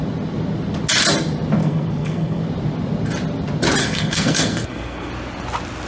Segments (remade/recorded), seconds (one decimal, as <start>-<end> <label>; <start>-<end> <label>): 0.0-1.6 recorded; 1.6-2.4 remade; 2.4-3.8 recorded; 3.8-5.1 remade; 5.1-5.9 recorded